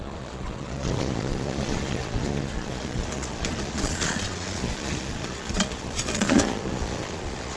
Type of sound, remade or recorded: remade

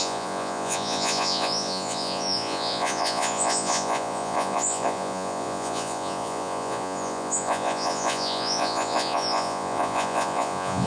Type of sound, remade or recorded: remade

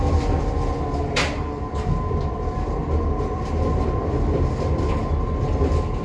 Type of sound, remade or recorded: recorded